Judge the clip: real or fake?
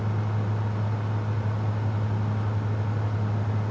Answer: real